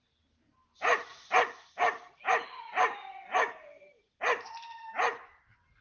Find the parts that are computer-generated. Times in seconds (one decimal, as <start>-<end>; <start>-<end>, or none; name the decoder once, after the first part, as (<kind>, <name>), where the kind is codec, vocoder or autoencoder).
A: none

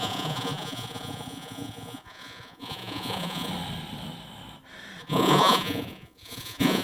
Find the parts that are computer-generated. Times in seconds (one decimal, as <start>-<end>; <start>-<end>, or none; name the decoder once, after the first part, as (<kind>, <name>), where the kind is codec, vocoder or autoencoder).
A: 0.0-3.5 (vocoder, Vocos); 5.0-6.8

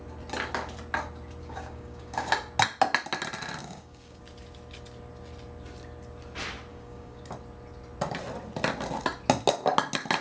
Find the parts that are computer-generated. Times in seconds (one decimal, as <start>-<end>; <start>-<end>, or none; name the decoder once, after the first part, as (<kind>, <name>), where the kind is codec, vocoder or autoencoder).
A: 1.4-2.3 (codec, DAC); 3.6-4.2; 6.7-7.2

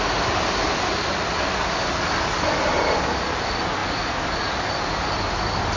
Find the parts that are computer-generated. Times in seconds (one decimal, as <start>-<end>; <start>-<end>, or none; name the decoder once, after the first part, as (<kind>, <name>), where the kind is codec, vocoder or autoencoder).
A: none

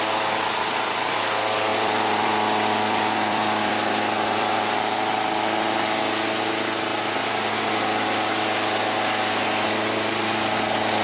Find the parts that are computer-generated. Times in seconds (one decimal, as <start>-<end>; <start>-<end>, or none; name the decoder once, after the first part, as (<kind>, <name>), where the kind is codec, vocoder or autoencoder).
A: 1.7-4.5 (vocoder, BigVGAN v2)